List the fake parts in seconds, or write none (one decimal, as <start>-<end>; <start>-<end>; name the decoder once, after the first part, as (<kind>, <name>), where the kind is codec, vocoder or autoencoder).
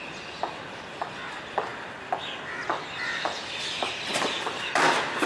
1.7-5.3 (vocoder, BigVGAN v2)